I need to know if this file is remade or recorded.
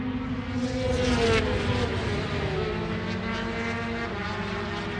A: recorded